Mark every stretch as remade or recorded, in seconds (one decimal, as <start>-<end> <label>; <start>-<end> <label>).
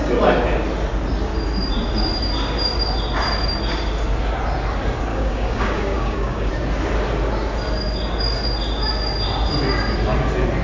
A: 0.0-5.1 recorded; 5.1-6.5 remade; 6.5-10.6 recorded